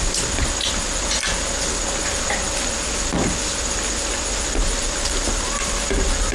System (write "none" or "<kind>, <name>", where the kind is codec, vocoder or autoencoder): none